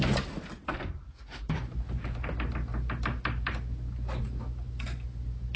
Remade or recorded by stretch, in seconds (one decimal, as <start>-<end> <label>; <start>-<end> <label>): 0.0-5.6 recorded